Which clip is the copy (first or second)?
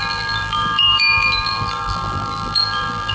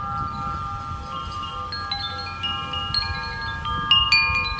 first